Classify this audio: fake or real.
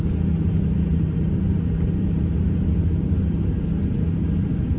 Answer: real